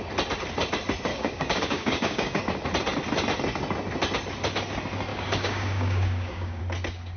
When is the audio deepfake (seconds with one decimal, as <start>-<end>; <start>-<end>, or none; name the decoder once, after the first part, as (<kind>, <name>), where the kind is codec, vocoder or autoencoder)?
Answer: 1.1-2.4 (codec, DAC); 5.1-6.6